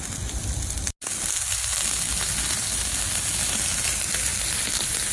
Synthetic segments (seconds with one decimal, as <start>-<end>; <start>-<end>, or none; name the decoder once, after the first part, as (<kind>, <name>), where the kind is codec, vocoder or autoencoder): none